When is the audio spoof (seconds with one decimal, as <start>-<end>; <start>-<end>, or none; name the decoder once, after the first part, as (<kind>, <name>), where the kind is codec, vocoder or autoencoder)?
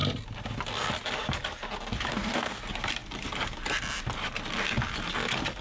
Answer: 2.1-2.6 (codec, DAC)